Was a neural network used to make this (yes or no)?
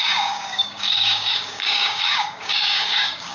yes